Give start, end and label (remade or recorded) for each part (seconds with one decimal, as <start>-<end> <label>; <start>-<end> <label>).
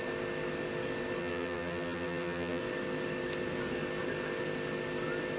0.0-1.2 recorded; 1.2-2.6 remade; 2.6-5.4 recorded